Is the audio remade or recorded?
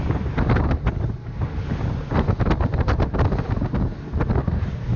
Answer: recorded